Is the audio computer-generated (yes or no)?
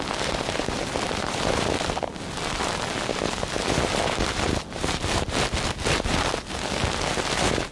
no